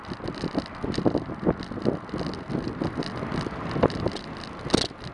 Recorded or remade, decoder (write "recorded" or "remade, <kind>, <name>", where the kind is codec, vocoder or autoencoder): recorded